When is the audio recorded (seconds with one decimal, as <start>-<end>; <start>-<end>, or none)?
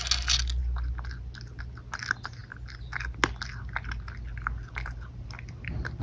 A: 0.0-6.0